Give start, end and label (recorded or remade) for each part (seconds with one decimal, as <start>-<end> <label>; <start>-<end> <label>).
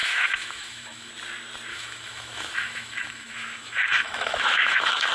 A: 0.0-1.1 remade; 1.1-1.7 recorded; 1.7-5.1 remade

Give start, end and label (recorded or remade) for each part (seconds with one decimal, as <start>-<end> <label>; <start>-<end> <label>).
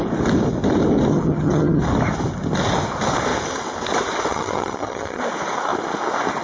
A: 0.0-1.1 recorded; 1.1-1.8 remade; 1.8-4.3 recorded; 4.3-5.2 remade; 5.2-6.4 recorded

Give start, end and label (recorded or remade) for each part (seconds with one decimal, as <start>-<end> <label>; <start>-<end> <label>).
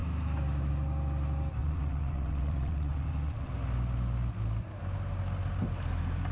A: 0.0-1.6 recorded; 1.6-3.5 remade; 3.5-6.3 recorded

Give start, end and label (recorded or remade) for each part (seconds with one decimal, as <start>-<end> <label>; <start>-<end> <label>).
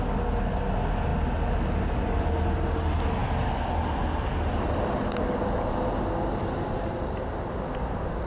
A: 0.0-8.3 recorded